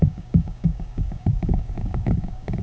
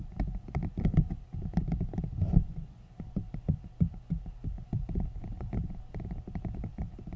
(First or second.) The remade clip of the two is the first